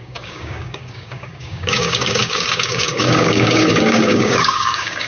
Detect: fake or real fake